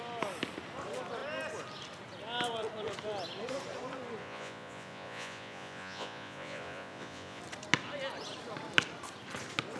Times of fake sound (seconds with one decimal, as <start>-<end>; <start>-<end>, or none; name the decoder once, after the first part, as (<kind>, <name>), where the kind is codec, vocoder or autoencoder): 4.2-7.4 (vocoder, Vocos)